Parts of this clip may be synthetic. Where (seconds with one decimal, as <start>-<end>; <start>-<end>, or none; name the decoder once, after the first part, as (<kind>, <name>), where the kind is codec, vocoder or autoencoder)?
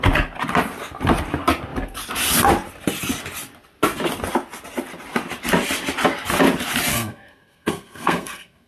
6.9-8.7 (codec, SNAC)